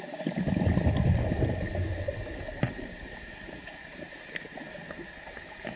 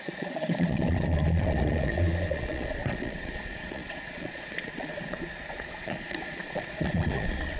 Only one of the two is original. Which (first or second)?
first